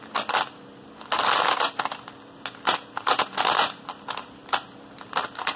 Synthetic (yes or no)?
no